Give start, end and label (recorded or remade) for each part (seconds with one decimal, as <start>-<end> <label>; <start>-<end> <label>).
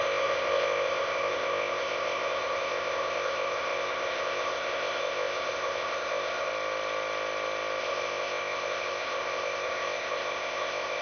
0.0-6.5 remade; 6.5-7.8 recorded; 7.8-11.0 remade